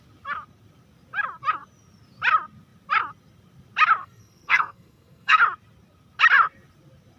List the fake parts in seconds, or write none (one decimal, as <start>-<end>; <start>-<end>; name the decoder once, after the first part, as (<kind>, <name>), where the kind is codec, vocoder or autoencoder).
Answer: 4.0-5.4 (codec, SNAC)